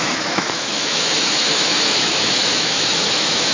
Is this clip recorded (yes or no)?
no